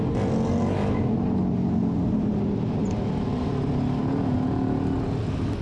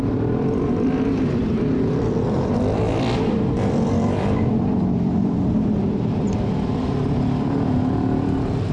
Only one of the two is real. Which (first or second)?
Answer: first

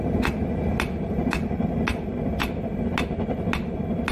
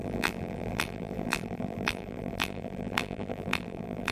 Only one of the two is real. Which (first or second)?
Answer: first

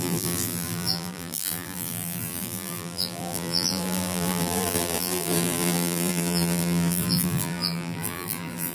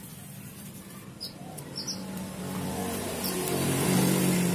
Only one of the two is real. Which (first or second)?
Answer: second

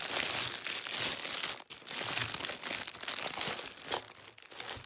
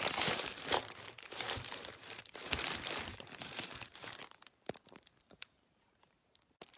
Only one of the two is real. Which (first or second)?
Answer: first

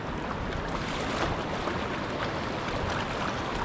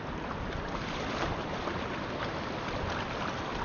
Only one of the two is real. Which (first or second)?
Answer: first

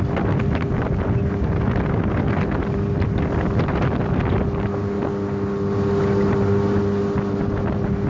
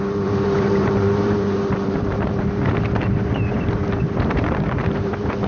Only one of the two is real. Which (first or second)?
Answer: first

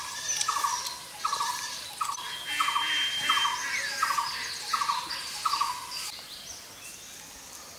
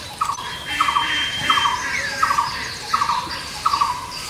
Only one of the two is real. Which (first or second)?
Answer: first